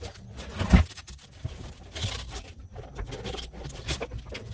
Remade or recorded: recorded